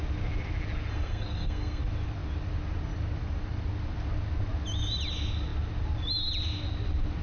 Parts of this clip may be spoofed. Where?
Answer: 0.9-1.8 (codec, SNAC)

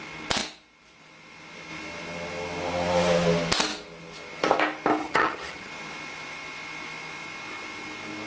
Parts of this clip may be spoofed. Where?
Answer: 5.0-5.7 (vocoder, HiFi-GAN)

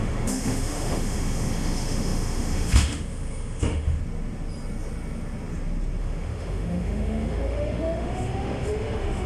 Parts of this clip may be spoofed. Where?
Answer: 0.0-4.0 (autoencoder, DAC-VAE); 6.0-9.3

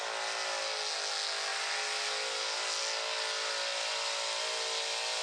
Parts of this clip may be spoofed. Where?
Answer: none

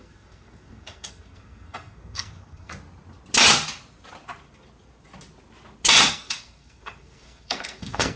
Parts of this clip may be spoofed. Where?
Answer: 0.0-2.7 (codec, SNAC); 6.1-8.2

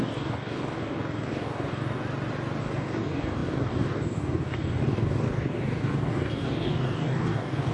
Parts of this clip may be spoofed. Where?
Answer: 0.0-2.0 (codec, DAC); 2.6-7.7